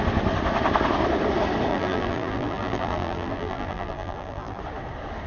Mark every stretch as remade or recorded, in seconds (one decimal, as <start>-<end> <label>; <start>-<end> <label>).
0.0-1.7 recorded; 1.7-4.6 remade; 4.6-5.3 recorded